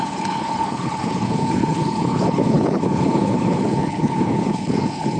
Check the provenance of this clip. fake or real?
fake